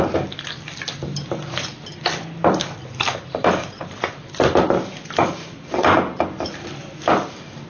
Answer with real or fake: fake